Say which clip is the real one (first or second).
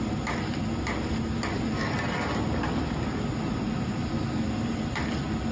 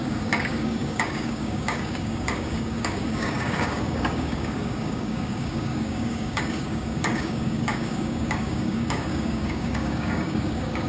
first